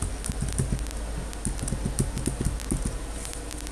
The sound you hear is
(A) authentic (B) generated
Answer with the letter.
A